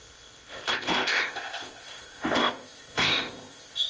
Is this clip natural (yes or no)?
no